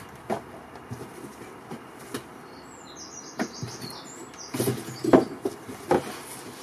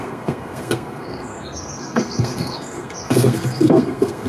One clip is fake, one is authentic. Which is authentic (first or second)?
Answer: first